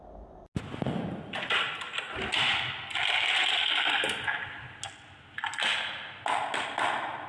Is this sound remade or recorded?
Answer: recorded